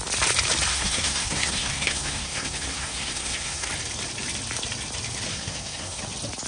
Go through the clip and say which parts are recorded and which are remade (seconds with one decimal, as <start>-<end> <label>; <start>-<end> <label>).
0.0-0.7 recorded; 0.7-3.7 remade; 3.7-5.3 recorded; 5.3-6.0 remade; 6.0-6.5 recorded